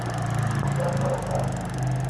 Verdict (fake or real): real